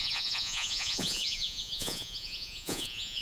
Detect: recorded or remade remade